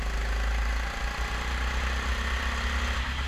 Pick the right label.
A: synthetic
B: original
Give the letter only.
B